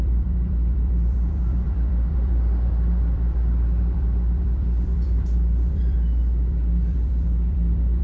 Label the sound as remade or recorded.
remade